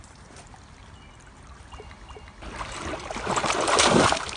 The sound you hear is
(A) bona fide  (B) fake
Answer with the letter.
A